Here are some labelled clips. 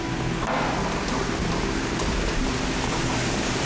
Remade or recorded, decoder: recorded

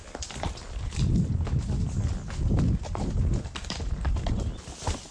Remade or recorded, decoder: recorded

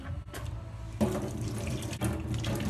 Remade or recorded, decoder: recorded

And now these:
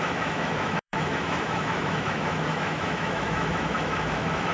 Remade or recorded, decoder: remade, autoencoder, DAC-VAE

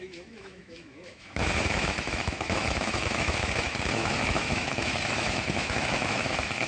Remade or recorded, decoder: remade, autoencoder, DAC-VAE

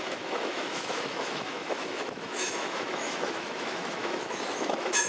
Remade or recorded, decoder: remade, autoencoder, DAC-VAE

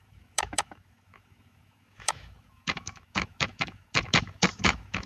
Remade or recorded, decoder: remade, autoencoder, DAC-VAE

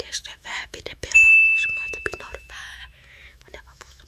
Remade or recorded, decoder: remade, autoencoder, DAC-VAE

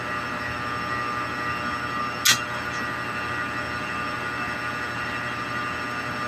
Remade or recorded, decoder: recorded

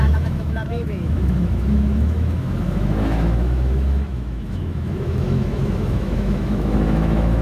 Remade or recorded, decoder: remade, autoencoder, DAC-VAE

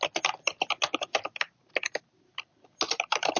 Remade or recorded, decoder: recorded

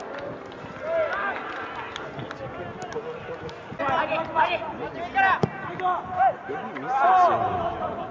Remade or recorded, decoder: recorded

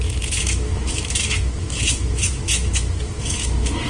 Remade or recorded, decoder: remade, autoencoder, DAC-VAE